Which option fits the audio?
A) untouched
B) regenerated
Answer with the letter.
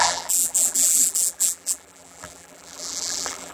B